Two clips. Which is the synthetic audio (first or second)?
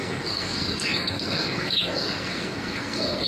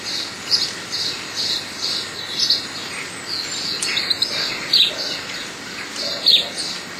first